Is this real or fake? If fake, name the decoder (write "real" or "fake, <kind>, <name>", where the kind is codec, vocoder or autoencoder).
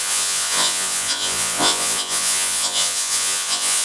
fake, vocoder, Vocos